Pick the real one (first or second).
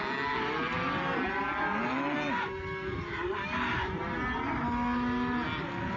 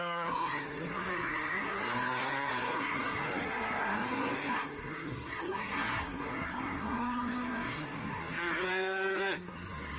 first